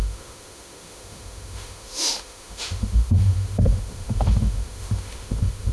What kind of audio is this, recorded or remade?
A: remade